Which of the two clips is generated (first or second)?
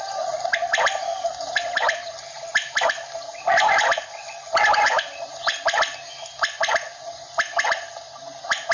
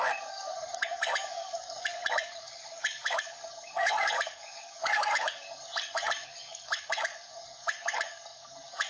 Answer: second